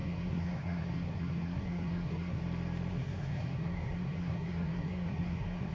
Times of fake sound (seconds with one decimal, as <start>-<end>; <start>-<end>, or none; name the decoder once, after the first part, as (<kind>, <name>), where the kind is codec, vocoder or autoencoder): 0.0-2.4 (codec, SNAC); 2.9-5.7